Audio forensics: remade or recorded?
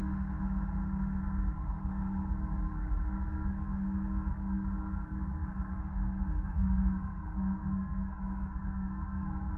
remade